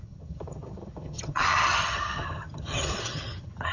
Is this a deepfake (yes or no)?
yes